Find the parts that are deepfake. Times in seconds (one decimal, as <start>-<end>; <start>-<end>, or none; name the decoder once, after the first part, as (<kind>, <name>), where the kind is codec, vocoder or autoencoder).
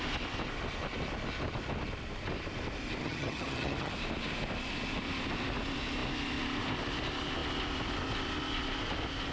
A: 3.0-3.9 (vocoder, HiFi-GAN)